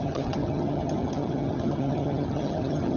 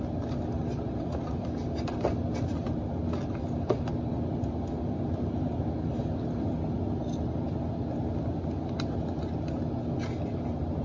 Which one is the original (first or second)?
second